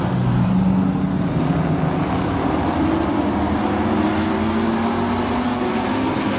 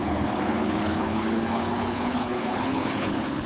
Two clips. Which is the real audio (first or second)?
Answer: first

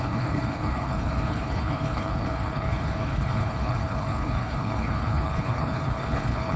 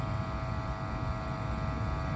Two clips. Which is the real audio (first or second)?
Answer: second